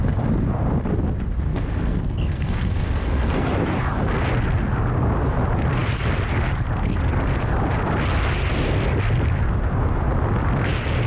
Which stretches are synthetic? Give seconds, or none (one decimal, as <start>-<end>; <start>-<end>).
1.5-3.5